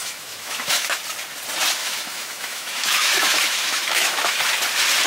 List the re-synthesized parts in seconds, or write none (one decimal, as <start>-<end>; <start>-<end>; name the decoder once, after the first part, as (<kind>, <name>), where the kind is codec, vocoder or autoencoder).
0.0-1.0 (autoencoder, DAC-VAE); 1.8-4.4